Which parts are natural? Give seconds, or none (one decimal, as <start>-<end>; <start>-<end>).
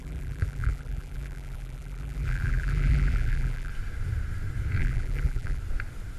3.7-4.8; 5.6-6.2